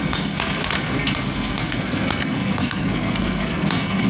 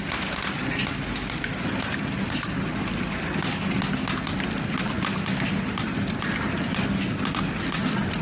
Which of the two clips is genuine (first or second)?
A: second